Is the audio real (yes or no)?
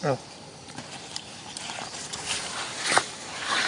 no